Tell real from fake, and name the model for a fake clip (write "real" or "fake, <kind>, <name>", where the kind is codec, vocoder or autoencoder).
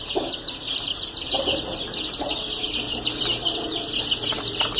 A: real